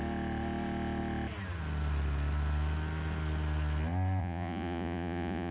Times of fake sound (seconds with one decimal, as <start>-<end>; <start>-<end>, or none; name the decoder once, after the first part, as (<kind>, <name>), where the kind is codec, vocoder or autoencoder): 4.2-5.5 (vocoder, Vocos)